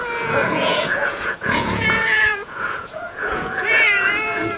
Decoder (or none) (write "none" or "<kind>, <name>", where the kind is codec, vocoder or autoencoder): vocoder, Vocos